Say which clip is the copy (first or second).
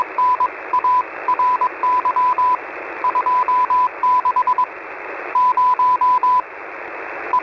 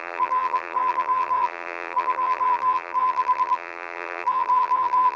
second